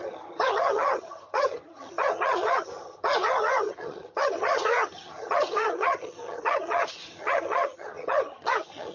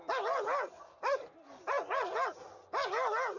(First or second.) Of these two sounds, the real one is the second